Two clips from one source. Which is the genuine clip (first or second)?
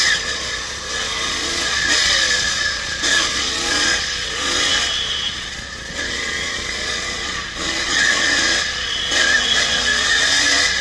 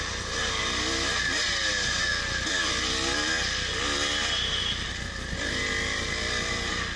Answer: second